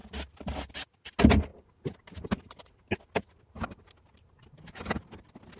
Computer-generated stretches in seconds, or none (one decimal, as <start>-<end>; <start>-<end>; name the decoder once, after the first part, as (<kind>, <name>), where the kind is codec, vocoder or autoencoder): none